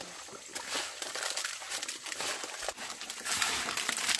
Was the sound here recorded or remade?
recorded